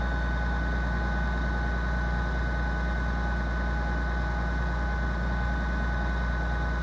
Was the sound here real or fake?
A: real